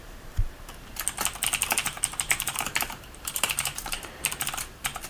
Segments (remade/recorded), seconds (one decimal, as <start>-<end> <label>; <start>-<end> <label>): 0.0-1.8 recorded; 1.8-4.3 remade; 4.3-5.1 recorded